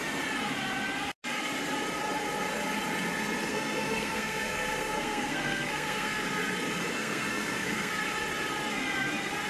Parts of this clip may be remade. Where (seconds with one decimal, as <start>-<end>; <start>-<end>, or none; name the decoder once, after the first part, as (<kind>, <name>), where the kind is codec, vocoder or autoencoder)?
3.5-6.2 (codec, SNAC); 6.9-7.9